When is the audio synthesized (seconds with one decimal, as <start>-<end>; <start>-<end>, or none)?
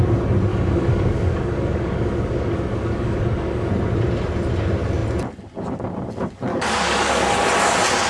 0.5-3.7; 6.5-7.3